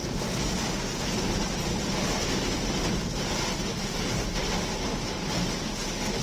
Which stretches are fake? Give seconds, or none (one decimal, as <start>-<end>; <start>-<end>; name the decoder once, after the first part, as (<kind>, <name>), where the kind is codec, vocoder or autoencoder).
none